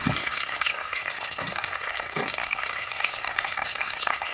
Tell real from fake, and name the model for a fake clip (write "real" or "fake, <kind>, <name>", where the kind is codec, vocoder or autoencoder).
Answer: fake, codec, SNAC